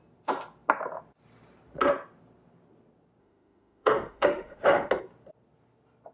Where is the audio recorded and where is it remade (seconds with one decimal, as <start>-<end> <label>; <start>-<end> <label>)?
0.0-3.2 recorded; 3.2-4.9 remade; 4.9-6.1 recorded